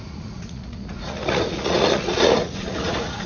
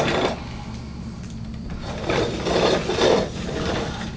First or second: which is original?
second